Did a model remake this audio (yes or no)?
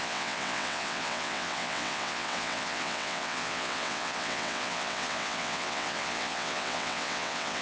yes